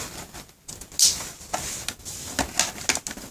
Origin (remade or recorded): recorded